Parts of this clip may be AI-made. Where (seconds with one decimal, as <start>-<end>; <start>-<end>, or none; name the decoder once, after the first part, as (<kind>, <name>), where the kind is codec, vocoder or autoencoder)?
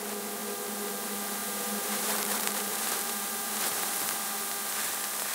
1.4-3.9 (vocoder, BigVGAN v2)